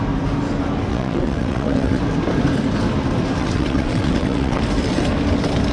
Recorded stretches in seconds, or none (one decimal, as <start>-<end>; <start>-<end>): 0.0-0.9; 2.0-3.4; 4.6-5.7

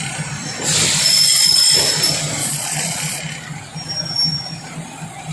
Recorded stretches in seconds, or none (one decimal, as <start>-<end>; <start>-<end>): 0.0-2.4; 3.2-5.3

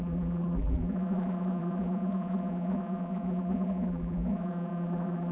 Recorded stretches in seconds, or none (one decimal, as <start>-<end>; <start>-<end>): none

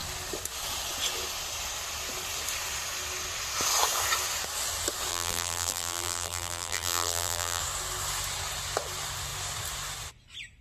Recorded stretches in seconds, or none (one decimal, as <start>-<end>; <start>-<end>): 0.0-5.1; 7.6-10.6

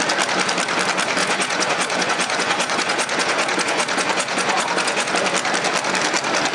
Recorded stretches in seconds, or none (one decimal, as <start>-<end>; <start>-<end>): 0.0-1.2; 5.1-6.5

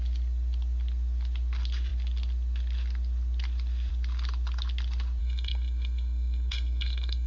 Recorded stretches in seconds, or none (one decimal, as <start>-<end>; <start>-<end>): 0.0-5.2

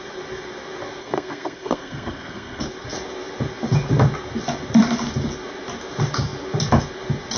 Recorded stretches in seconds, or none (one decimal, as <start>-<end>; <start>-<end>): 0.0-1.0; 2.6-7.4

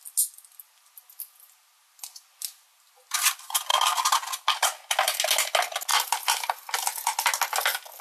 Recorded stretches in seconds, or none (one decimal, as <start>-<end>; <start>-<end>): 0.0-5.9; 6.5-8.0